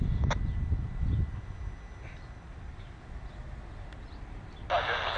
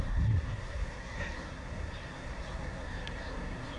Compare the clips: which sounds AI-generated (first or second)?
second